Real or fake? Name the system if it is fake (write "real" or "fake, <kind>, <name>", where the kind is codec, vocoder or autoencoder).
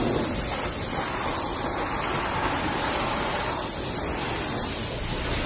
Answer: real